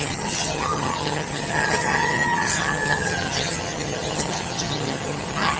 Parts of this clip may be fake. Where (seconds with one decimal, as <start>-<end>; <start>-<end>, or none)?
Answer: 0.0-5.6